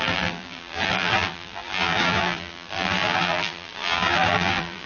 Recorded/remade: remade